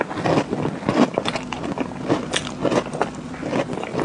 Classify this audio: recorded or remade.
recorded